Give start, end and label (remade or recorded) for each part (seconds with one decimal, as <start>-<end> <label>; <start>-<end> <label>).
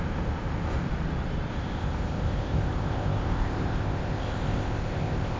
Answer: 0.0-0.9 remade; 0.9-1.5 recorded; 1.5-5.4 remade